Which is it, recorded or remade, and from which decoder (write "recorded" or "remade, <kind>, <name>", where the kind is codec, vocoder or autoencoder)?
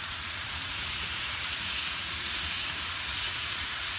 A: remade, vocoder, Vocos